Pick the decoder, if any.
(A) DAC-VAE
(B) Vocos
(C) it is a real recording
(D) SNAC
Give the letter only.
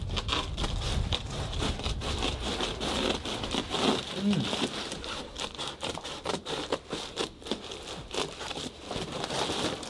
C